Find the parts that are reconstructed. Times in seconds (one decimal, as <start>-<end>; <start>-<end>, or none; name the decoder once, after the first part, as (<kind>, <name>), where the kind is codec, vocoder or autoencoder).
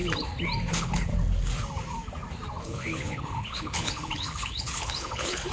0.7-1.1 (codec, HILCodec); 2.6-5.5